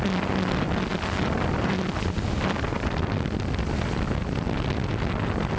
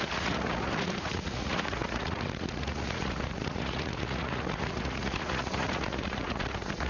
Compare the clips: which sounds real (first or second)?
first